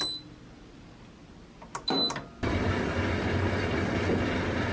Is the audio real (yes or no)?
yes